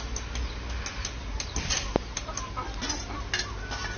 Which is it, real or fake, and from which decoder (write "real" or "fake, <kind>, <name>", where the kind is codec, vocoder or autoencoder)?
real